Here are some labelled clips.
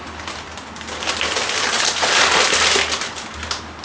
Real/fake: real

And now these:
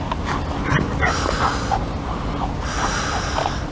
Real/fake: real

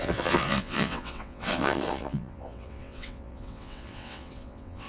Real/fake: fake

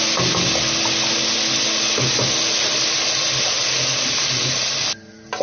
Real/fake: real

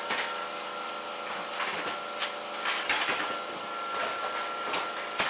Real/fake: real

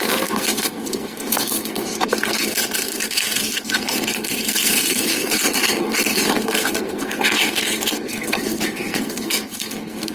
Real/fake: fake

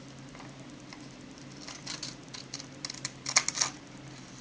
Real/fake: real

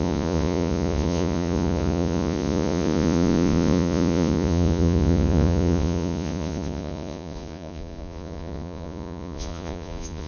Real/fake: fake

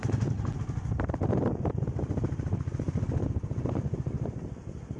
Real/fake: real